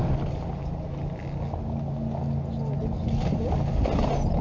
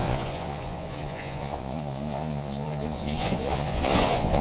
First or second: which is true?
first